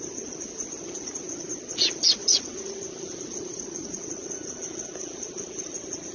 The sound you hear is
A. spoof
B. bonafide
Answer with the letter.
B